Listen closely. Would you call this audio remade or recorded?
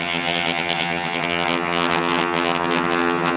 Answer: remade